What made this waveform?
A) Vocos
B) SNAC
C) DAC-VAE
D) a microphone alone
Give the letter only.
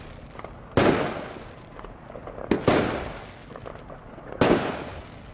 D